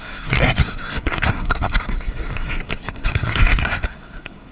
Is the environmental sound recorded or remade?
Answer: remade